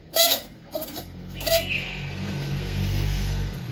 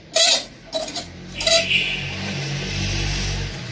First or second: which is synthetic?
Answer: first